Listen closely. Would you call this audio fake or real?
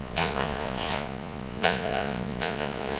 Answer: fake